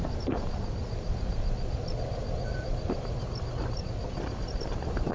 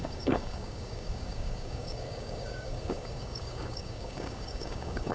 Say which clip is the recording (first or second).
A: first